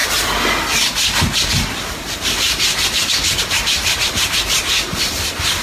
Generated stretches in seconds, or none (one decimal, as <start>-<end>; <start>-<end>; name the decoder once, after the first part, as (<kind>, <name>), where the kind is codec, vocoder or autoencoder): none